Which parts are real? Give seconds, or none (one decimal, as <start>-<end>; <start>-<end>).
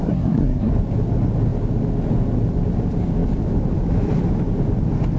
0.7-5.2